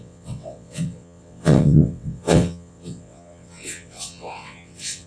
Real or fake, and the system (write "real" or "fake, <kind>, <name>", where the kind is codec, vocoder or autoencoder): fake, vocoder, WaveNeXt